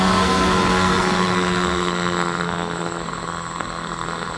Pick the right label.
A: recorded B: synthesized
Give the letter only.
B